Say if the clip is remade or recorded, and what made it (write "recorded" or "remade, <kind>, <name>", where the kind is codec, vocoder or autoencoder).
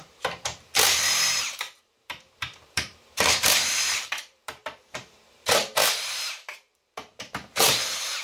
remade, vocoder, BigVGAN v2